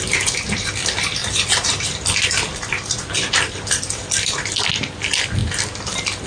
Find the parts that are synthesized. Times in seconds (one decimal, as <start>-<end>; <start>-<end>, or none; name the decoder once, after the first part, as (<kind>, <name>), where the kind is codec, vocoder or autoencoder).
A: 1.2-3.3 (vocoder, BigVGAN v2)